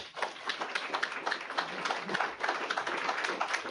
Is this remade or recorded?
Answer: recorded